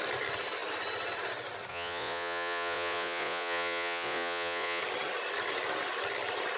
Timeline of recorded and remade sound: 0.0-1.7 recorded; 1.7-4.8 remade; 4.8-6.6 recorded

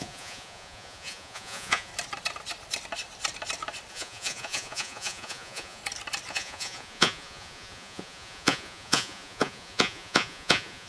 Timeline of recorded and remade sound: 0.0-1.9 remade; 1.9-3.9 recorded; 3.9-5.8 remade; 5.8-6.3 recorded; 6.3-10.9 remade

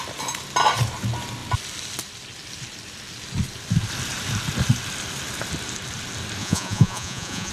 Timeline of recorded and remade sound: 0.0-6.4 recorded; 6.4-7.5 remade

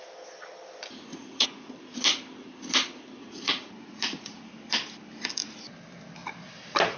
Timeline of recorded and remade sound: 0.0-1.1 recorded; 1.1-1.7 remade; 1.7-3.2 recorded; 3.2-4.4 remade; 4.4-7.0 recorded

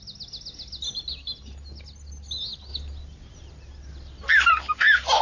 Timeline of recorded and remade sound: 0.0-5.2 recorded

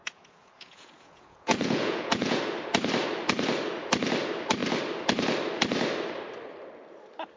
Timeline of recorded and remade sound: 0.0-2.4 remade; 2.4-7.4 recorded